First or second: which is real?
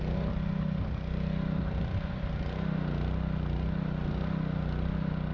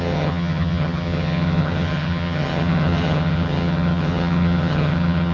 first